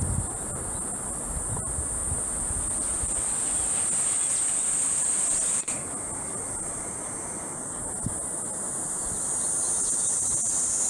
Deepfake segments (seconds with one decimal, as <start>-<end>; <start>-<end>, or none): none